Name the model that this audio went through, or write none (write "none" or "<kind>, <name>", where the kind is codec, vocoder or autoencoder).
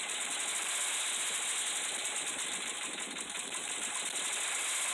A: none